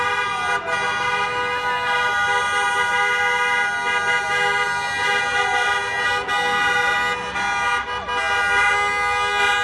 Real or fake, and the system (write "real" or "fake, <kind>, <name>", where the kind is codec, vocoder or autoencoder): real